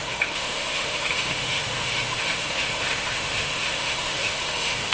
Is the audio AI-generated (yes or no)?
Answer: yes